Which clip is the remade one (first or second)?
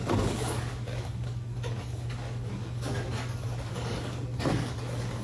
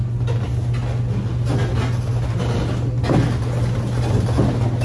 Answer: first